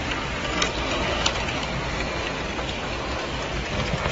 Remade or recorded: recorded